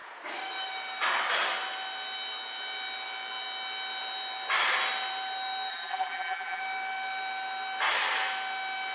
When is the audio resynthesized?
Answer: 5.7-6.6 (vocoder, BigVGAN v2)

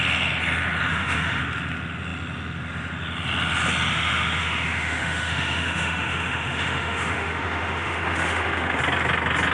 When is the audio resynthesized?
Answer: 0.9-1.4 (autoencoder, DAC-VAE); 3.9-8.8

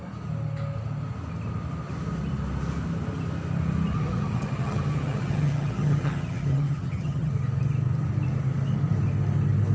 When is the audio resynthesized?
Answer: 3.9-7.3 (vocoder, HiFi-GAN)